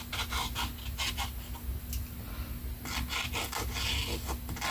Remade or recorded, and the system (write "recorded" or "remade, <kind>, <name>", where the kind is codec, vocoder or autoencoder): recorded